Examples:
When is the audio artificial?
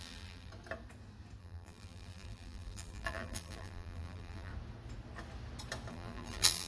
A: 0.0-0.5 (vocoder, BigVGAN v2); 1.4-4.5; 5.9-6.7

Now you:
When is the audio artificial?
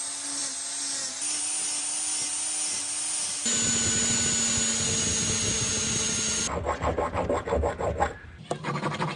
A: none